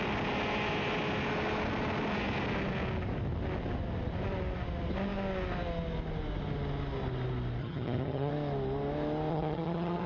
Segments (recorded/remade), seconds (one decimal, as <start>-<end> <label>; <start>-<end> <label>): 0.0-7.6 recorded; 7.6-8.3 remade; 8.3-9.3 recorded; 9.3-10.1 remade